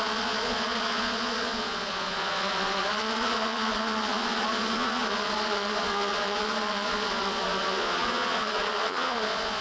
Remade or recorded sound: remade